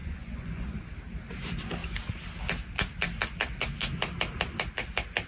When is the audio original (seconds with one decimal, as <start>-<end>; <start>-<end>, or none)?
0.8-5.3